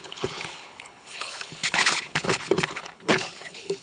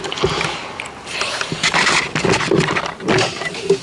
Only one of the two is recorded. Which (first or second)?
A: second